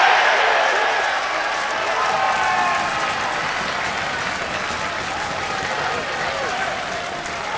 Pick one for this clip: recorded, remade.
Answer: recorded